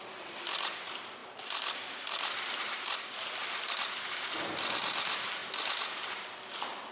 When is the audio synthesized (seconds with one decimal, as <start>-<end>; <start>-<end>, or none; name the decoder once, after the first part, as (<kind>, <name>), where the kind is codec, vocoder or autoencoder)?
1.2-3.7 (vocoder, BigVGAN v2)